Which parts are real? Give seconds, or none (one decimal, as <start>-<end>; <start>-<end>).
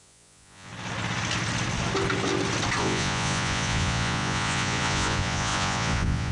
0.7-2.8